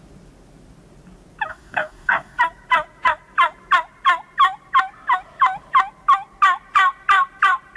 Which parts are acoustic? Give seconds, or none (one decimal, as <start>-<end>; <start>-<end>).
0.0-1.5; 2.4-7.8